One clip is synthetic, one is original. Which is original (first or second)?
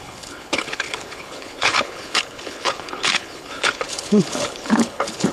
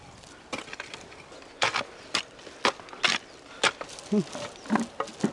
second